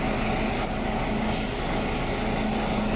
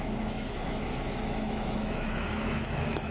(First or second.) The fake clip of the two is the second